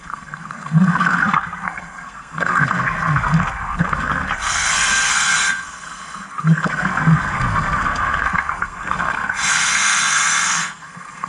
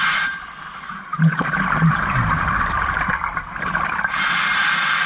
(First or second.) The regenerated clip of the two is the first